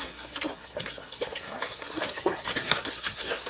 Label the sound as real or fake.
fake